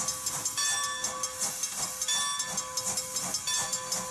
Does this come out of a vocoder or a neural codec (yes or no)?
no